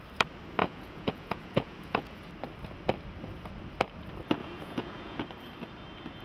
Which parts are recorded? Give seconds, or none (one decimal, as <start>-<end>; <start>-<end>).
0.0-0.6; 2.2-4.4; 5.2-6.2